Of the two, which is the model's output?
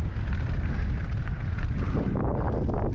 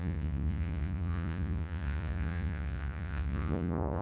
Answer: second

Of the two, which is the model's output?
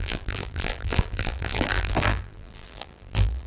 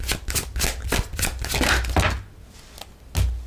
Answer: first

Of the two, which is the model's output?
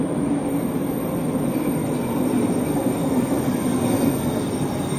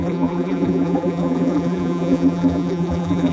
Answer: second